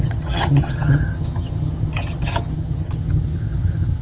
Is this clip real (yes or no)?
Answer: no